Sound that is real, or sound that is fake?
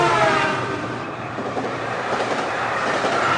fake